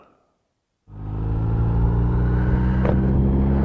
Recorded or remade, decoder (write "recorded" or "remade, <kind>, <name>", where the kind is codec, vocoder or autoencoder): recorded